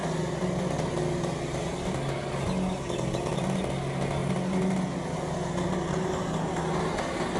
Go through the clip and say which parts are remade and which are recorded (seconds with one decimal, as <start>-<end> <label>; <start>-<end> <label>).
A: 0.0-7.4 recorded